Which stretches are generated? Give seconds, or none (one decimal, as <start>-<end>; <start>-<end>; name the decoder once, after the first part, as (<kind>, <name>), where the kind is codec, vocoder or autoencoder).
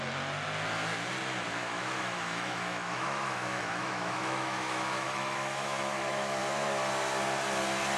1.6-6.4 (autoencoder, DAC-VAE)